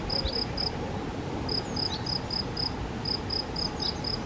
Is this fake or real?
real